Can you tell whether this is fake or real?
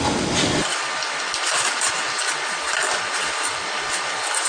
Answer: real